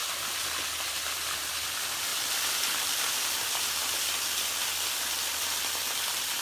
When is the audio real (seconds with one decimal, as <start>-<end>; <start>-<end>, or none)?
0.0-6.4